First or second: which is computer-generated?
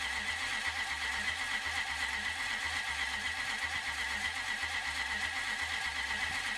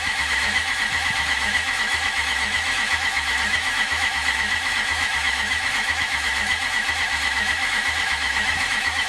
second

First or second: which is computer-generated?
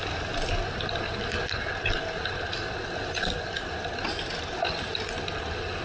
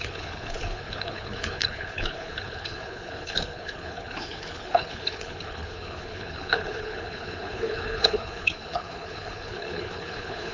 second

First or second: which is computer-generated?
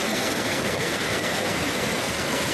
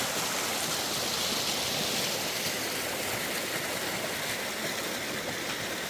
first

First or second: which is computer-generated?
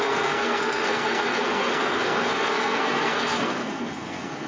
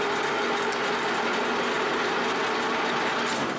first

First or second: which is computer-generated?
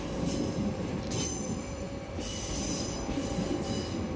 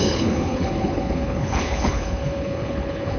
second